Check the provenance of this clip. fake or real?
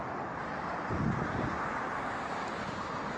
real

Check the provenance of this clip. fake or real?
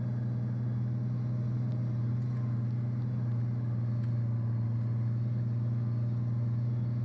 real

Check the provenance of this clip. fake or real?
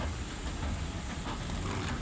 real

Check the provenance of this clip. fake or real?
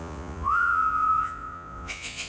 fake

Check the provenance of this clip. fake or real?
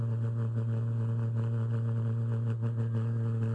real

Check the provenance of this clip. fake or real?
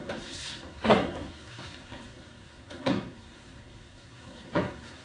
fake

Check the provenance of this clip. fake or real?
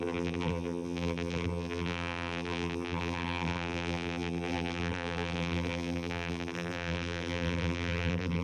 fake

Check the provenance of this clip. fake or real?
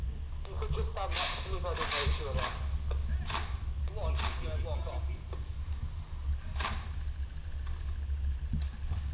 real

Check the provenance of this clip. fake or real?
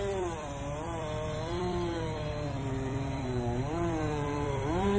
fake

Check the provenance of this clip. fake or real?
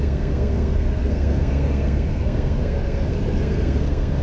fake